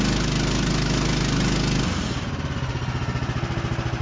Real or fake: real